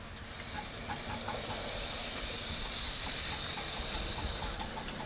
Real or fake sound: real